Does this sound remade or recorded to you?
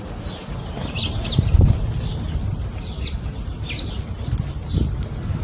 recorded